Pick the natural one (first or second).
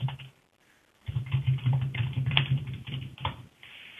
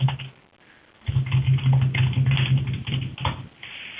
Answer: second